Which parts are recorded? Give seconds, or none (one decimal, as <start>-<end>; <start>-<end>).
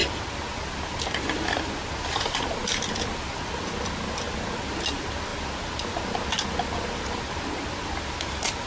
0.0-8.7